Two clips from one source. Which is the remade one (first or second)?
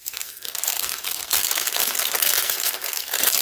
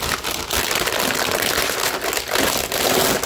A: first